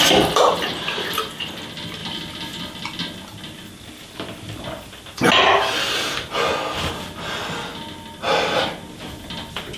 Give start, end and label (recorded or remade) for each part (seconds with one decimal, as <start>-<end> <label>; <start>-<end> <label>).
0.0-9.8 recorded